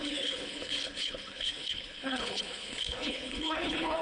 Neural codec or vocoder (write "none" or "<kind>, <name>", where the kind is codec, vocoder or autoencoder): codec, HILCodec